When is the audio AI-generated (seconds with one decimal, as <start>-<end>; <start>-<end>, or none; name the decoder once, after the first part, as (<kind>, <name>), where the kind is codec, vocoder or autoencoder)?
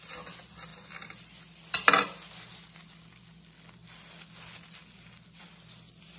none